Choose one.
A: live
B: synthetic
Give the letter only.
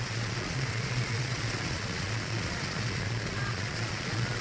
B